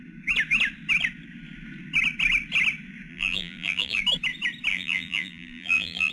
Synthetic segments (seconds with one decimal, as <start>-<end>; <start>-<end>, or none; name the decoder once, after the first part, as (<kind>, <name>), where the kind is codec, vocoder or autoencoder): 3.1-4.0 (vocoder, BigVGAN v2); 4.7-6.1